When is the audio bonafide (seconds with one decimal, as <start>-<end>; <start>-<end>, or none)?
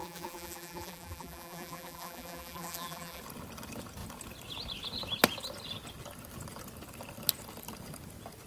3.2-8.5